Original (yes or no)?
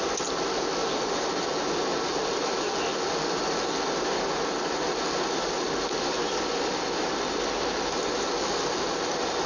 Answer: yes